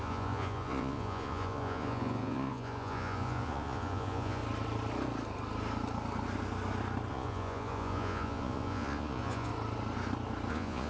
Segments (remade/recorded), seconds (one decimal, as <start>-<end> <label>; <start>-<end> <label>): 0.0-4.4 remade; 4.4-7.1 recorded; 7.1-9.5 remade; 9.5-10.5 recorded; 10.5-10.9 remade